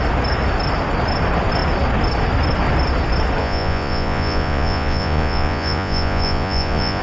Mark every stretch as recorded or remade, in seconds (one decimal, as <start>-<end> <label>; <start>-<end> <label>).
0.0-3.4 recorded; 3.4-7.0 remade